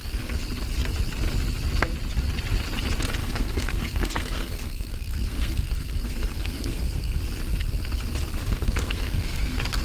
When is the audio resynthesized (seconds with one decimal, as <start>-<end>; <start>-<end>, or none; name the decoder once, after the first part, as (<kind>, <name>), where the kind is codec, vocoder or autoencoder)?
3.2-7.2 (codec, SNAC); 8.4-9.8